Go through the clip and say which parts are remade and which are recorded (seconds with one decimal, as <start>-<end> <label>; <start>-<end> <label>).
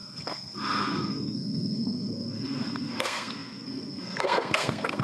0.0-5.0 remade